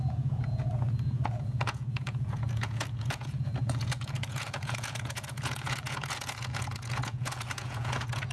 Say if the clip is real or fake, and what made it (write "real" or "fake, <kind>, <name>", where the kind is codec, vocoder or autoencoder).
fake, vocoder, Vocos